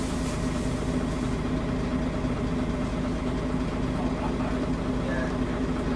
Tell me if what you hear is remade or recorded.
recorded